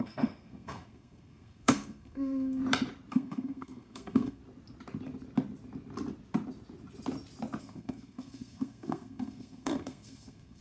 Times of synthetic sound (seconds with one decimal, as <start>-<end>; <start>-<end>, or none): 0.0-2.6; 3.1-4.4; 7.6-10.6

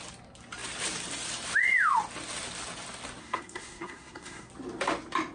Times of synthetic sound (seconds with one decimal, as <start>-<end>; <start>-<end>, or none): 3.2-4.5